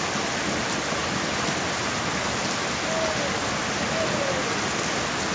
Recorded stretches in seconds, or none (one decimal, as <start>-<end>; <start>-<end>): 0.0-1.0; 2.4-5.3